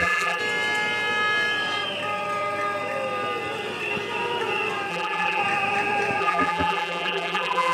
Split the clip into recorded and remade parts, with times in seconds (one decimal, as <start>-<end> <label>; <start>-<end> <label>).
0.0-0.4 remade; 0.4-4.9 recorded; 4.9-5.4 remade; 5.4-6.2 recorded; 6.2-7.7 remade